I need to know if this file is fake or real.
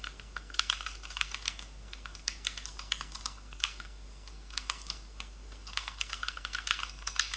fake